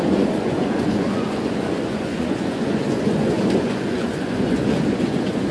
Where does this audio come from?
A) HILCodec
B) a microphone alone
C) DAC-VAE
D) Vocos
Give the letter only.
D